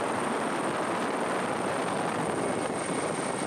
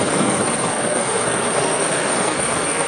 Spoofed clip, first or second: second